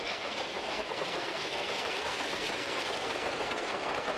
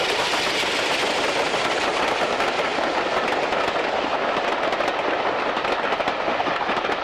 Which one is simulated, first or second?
first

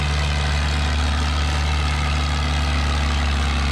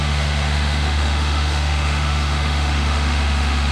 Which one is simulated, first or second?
second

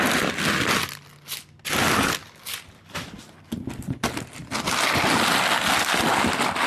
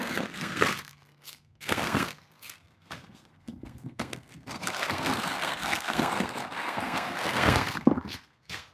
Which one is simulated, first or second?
second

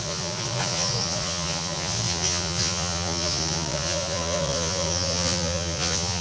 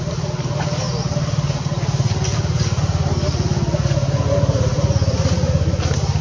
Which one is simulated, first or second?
first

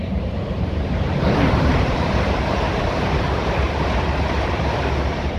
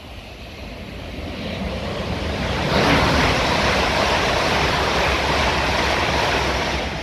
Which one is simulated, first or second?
first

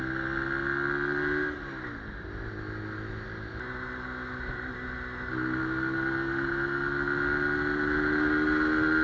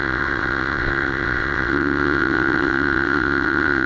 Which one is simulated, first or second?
second